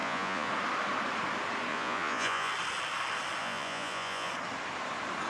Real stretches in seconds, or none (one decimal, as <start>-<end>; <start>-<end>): 0.5-1.7; 2.5-3.4; 4.3-5.3